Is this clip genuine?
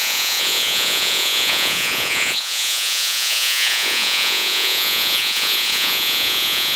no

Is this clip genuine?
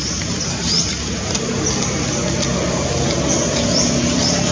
yes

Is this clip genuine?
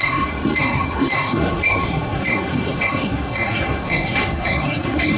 no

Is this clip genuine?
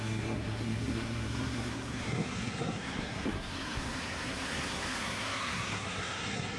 no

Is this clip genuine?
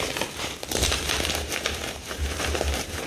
no